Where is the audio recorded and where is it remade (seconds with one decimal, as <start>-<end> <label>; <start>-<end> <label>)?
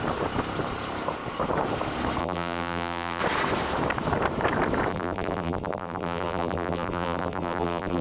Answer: 0.0-2.2 recorded; 2.2-3.2 remade; 3.2-4.9 recorded; 4.9-8.0 remade